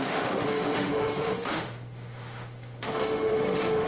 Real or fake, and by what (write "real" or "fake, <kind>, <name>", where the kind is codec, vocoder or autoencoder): fake, autoencoder, DAC-VAE